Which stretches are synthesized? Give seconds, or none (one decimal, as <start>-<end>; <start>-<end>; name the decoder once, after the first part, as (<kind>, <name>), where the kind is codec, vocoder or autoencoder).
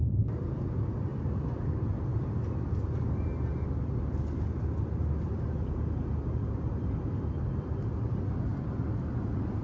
1.1-1.7 (vocoder, BigVGAN v2)